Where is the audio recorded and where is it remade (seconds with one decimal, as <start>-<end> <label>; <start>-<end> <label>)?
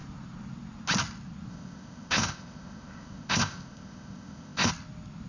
0.0-1.5 recorded; 1.5-4.7 remade; 4.7-5.3 recorded